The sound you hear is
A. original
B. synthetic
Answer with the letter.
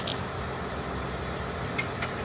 A